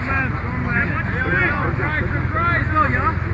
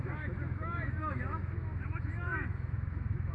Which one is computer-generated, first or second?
second